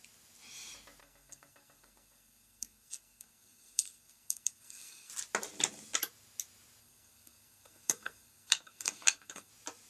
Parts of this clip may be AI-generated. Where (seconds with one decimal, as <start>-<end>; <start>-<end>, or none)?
1.0-5.1; 6.8-9.5